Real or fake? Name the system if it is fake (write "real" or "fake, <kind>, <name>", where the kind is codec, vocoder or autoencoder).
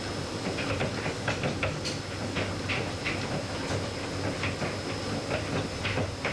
real